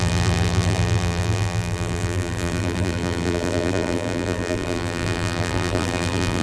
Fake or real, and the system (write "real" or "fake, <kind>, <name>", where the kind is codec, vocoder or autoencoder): fake, vocoder, BigVGAN v2